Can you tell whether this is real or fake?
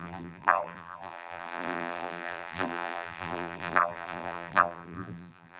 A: fake